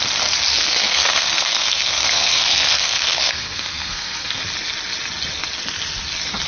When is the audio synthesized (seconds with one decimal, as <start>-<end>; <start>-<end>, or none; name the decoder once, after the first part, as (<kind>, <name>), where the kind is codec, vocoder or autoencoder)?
0.5-4.4 (codec, SNAC)